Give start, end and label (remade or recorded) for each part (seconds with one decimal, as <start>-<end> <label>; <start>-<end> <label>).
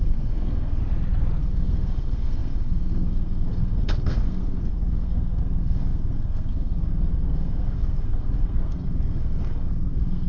0.0-0.8 remade; 0.8-1.4 recorded; 1.4-10.3 remade